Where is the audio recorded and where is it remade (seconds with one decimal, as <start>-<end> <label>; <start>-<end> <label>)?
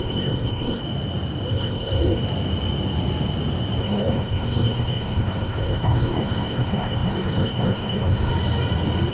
0.0-0.8 remade; 0.8-1.5 recorded; 1.5-2.2 remade; 2.2-3.8 recorded; 3.8-8.3 remade; 8.3-9.1 recorded